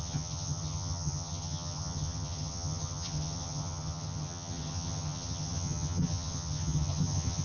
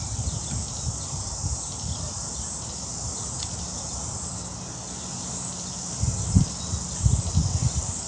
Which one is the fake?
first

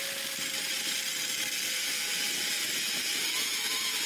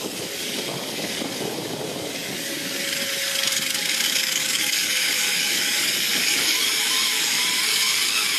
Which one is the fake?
second